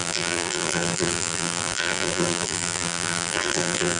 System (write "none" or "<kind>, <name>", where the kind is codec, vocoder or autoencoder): vocoder, BigVGAN v2